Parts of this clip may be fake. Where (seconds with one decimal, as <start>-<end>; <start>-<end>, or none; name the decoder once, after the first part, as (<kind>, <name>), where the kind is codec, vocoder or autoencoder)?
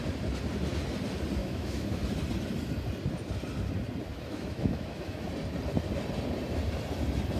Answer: 1.4-2.0 (autoencoder, DAC-VAE); 4.1-5.3